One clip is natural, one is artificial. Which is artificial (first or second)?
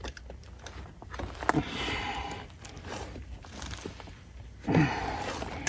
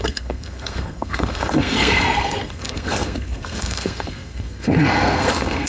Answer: second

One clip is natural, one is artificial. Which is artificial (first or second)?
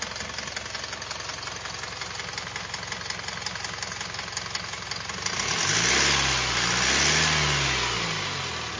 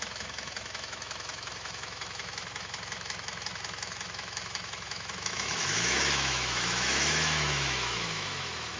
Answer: second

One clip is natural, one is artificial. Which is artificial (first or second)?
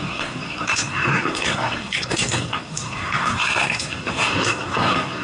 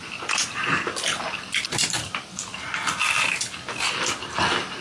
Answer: first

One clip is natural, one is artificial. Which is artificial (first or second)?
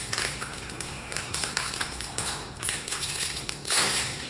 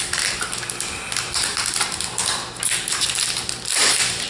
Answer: first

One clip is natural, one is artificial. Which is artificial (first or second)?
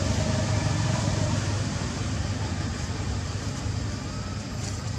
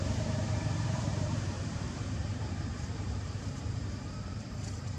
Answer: second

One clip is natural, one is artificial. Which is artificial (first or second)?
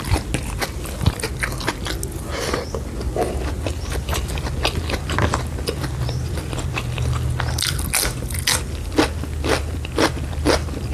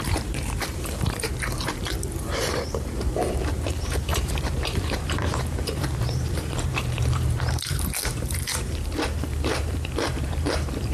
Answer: second